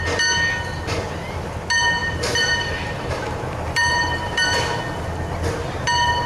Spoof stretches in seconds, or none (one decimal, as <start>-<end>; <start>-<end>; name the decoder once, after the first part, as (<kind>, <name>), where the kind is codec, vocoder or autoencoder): 2.0-4.8 (vocoder, BigVGAN v2)